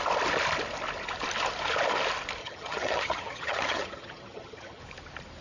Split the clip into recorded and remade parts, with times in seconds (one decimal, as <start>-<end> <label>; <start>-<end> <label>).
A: 0.0-2.4 recorded; 2.4-4.8 remade; 4.8-5.4 recorded